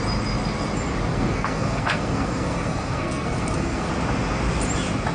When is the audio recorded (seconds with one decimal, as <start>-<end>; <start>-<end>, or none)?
0.0-1.1; 3.9-5.1

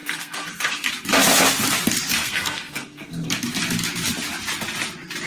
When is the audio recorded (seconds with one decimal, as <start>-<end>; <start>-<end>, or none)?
0.9-2.1; 3.3-5.3

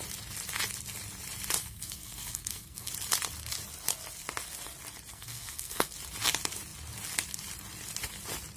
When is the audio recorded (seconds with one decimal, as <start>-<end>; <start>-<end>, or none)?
0.0-1.6; 2.9-5.1; 5.9-8.6

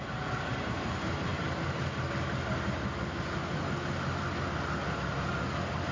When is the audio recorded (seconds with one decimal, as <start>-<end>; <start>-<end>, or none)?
0.0-5.9